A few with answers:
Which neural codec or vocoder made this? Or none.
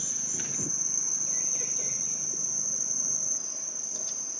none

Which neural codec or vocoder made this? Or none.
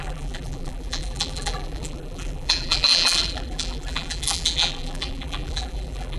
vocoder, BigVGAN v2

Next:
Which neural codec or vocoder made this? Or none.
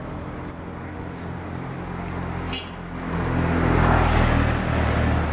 none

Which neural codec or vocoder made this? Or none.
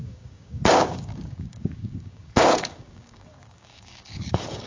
codec, DAC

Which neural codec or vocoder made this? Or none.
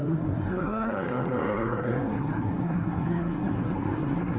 codec, SNAC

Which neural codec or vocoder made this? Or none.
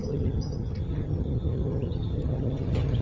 vocoder, HiFi-GAN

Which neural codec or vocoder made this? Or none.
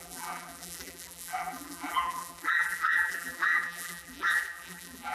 vocoder, BigVGAN v2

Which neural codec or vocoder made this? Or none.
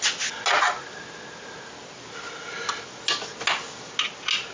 none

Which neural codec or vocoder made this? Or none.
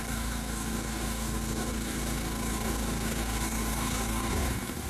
codec, DAC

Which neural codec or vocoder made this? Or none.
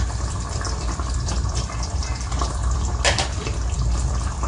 vocoder, BigVGAN v2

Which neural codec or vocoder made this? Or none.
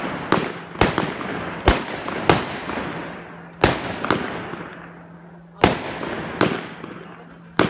none